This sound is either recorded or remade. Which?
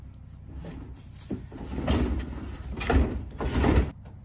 recorded